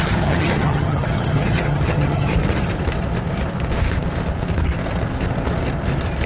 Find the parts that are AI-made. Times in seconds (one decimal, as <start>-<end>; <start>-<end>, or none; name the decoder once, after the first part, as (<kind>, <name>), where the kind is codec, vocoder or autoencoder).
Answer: 0.0-2.3 (vocoder, HiFi-GAN)